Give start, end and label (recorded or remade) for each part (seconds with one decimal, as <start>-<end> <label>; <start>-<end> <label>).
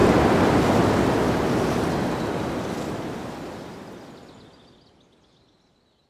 0.0-6.1 recorded